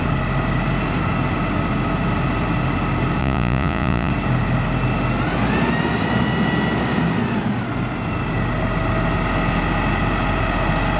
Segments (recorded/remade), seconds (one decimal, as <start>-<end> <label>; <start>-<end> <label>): 0.0-3.2 recorded; 3.2-4.1 remade; 4.1-11.0 recorded